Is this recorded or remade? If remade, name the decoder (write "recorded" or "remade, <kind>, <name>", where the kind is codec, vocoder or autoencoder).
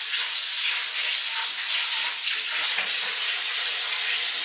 recorded